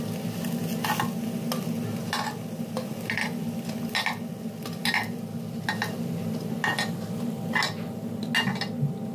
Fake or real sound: real